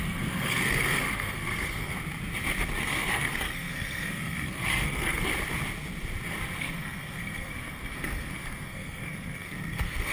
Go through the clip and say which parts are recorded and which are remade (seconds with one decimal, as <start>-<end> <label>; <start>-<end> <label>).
0.0-1.9 remade; 1.9-2.8 recorded; 2.8-5.3 remade; 5.3-6.6 recorded; 6.6-10.1 remade